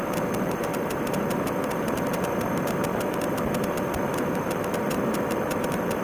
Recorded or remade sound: remade